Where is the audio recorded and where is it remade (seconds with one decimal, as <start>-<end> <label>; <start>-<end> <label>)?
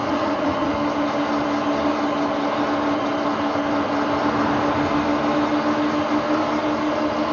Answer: 0.0-0.7 remade; 0.7-7.3 recorded